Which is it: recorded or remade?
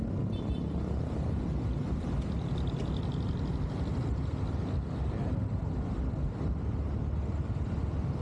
recorded